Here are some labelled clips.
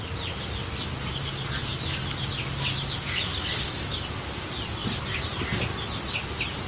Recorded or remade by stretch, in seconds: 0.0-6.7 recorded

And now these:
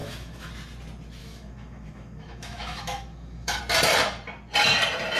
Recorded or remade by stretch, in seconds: 0.0-0.5 remade; 0.5-1.2 recorded; 1.2-3.6 remade; 3.6-5.2 recorded

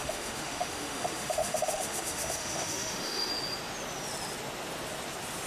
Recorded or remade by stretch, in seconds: 0.0-3.3 remade; 3.3-5.5 recorded

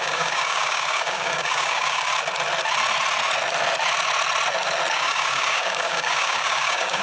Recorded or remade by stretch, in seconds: 0.0-2.1 remade; 2.1-4.9 recorded; 4.9-7.0 remade

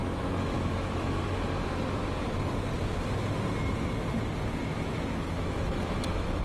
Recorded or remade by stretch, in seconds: 0.0-1.2 remade; 1.2-4.7 recorded; 4.7-6.4 remade

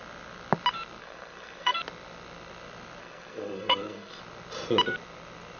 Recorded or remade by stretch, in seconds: 0.0-1.0 recorded; 1.0-1.8 remade; 1.8-3.0 recorded; 3.0-4.2 remade; 4.2-5.6 recorded

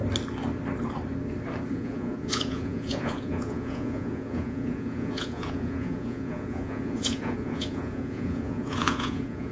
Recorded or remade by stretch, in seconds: 0.0-1.7 recorded; 1.7-9.5 remade

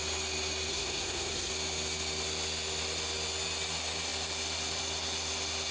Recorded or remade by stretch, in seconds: 0.0-0.7 recorded; 0.7-1.5 remade; 1.5-5.7 recorded